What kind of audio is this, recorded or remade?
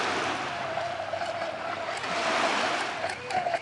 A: recorded